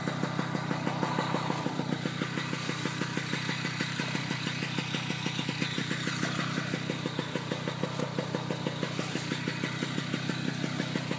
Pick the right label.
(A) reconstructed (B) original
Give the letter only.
B